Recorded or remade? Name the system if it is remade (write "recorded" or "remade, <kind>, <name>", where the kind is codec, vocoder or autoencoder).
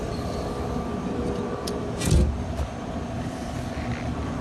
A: recorded